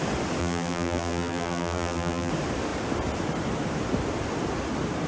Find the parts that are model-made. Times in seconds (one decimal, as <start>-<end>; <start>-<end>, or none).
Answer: 0.4-2.3